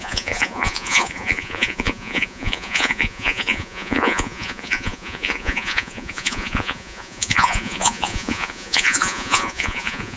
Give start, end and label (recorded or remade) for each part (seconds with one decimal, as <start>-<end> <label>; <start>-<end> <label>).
0.0-10.2 remade